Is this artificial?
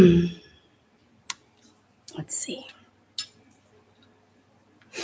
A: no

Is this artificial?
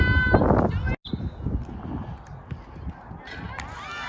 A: no